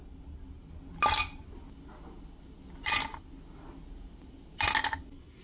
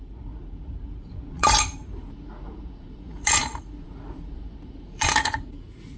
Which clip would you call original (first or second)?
first